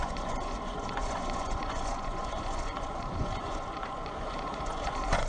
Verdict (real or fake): fake